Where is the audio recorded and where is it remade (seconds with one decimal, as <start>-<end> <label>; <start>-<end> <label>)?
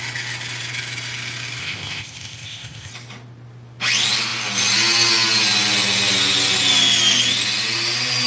0.0-1.6 recorded; 1.6-2.9 remade; 2.9-8.3 recorded